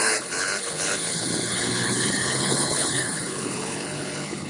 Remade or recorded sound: remade